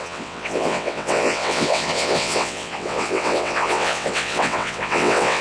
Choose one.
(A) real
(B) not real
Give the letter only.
B